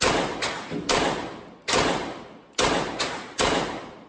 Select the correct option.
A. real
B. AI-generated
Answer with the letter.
A